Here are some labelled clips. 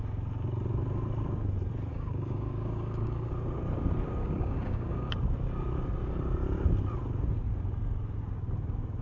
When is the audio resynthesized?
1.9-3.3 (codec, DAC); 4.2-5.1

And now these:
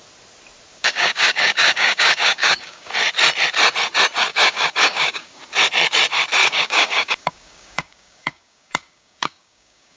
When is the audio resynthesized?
0.7-2.9 (codec, DAC); 4.3-5.4; 6.4-10.0

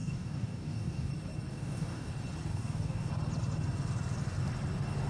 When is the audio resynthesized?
0.0-1.1 (codec, DAC); 1.5-2.1; 2.5-3.1